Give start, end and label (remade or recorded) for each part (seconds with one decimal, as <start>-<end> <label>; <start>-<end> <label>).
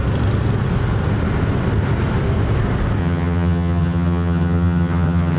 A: 0.0-3.0 recorded; 3.0-5.4 remade